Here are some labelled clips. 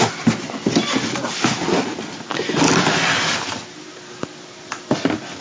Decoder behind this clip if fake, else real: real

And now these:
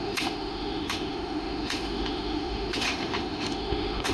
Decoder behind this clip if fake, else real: fake, autoencoder, DAC-VAE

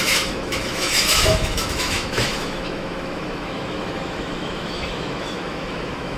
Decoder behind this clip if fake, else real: fake, autoencoder, DAC-VAE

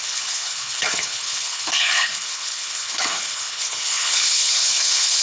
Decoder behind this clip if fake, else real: fake, codec, HILCodec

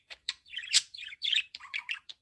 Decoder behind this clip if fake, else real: fake, vocoder, BigVGAN v2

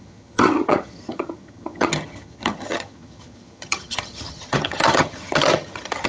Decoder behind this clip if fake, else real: fake, vocoder, HiFi-GAN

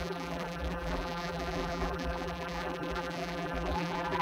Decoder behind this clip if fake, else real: fake, vocoder, BigVGAN v2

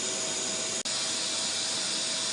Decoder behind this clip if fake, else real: real